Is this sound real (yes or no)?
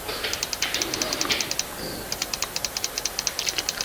yes